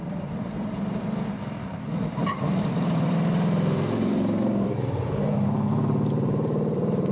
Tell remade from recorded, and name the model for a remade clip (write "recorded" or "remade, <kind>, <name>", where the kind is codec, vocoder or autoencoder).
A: remade, vocoder, BigVGAN v2